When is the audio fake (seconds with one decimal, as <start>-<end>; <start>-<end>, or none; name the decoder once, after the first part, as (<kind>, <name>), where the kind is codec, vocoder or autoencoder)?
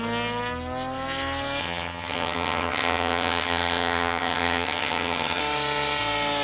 1.6-5.4 (vocoder, HiFi-GAN)